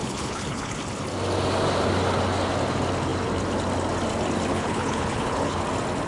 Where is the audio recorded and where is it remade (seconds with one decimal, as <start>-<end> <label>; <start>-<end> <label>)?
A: 0.0-0.7 remade; 0.7-4.5 recorded; 4.5-5.6 remade; 5.6-6.1 recorded